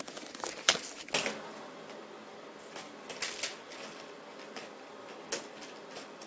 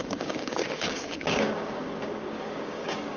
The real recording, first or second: first